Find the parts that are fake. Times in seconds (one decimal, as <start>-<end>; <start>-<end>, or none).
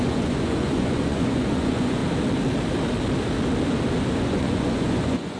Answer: 0.0-2.0; 4.1-5.4